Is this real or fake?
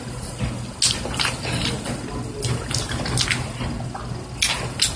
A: real